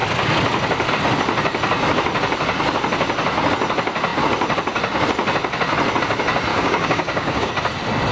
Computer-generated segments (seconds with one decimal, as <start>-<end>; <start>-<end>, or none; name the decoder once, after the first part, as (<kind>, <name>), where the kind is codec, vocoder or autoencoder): 6.5-7.5 (codec, DAC)